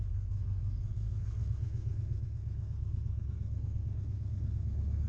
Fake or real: fake